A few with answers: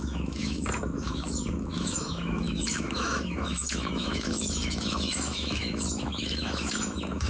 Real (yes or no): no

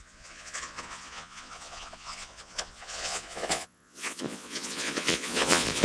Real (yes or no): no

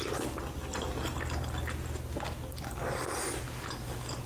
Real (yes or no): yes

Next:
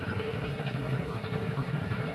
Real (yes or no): no